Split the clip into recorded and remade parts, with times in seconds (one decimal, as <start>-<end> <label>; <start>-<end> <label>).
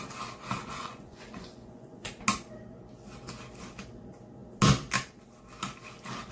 0.0-0.6 recorded; 0.6-2.1 remade; 2.1-6.3 recorded